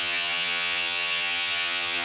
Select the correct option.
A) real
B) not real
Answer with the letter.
B